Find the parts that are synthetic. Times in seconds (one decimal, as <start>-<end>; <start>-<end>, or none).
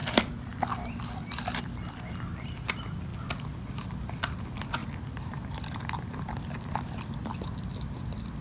0.0-3.1; 3.7-4.8; 5.4-8.4